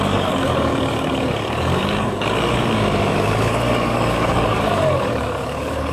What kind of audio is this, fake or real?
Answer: fake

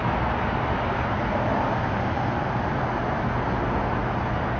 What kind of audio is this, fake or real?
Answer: real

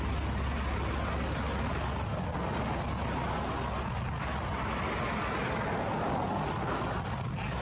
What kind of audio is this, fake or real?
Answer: real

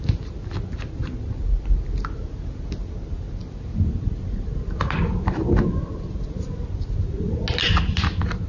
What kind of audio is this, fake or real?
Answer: real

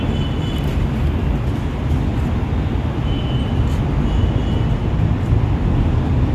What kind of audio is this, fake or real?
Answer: real